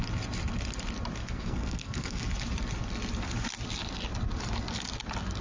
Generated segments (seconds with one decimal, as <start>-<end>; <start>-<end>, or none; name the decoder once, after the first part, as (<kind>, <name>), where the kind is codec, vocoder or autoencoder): 1.2-2.2 (codec, SNAC)